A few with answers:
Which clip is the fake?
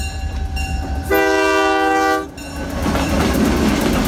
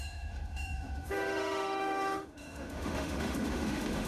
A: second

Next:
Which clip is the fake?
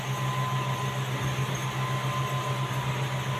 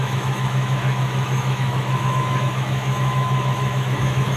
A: second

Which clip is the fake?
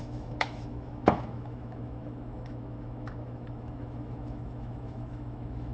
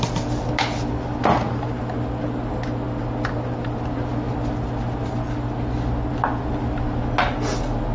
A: first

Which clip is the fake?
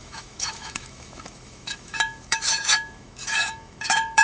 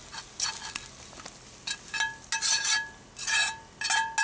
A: first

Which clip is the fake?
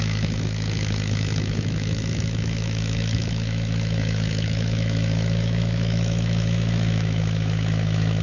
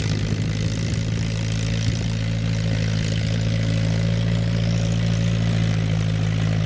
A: first